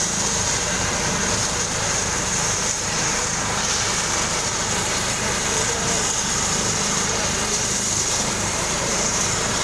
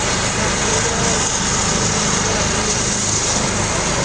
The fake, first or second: first